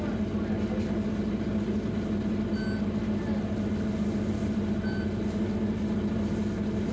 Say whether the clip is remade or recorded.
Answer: recorded